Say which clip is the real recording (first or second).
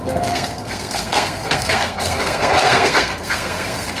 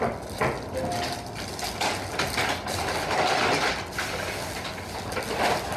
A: second